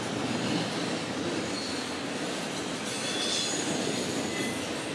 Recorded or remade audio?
recorded